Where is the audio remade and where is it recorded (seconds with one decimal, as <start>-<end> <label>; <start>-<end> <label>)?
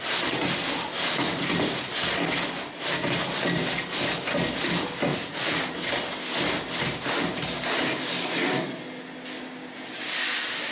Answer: 0.0-5.1 recorded; 5.1-5.6 remade; 5.6-10.7 recorded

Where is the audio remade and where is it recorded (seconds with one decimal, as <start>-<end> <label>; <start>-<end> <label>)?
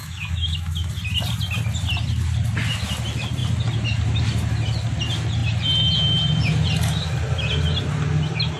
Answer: 0.0-0.9 remade; 0.9-8.6 recorded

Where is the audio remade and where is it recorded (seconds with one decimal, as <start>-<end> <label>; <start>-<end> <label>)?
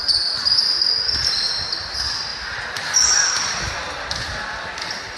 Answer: 0.0-5.2 recorded